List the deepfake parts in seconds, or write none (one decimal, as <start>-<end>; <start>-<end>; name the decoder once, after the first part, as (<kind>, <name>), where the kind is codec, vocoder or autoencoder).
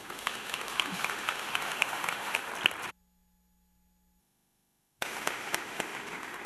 0.0-2.5 (autoencoder, DAC-VAE); 4.2-6.5